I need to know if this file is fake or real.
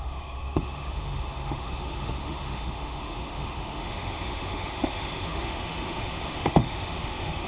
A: fake